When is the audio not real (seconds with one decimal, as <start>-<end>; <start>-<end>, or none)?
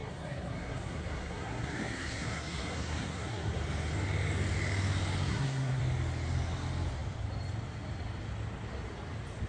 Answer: 0.0-3.6; 5.3-5.8